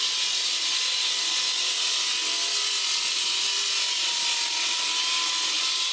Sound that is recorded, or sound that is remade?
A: recorded